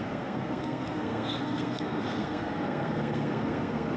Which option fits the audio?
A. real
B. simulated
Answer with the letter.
B